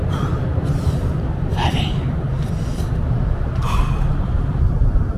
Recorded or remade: remade